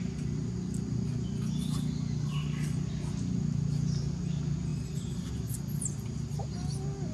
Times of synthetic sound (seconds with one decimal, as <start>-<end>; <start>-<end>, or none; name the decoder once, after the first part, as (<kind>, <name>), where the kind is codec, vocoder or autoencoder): none